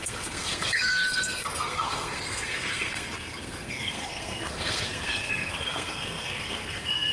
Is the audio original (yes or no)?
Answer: no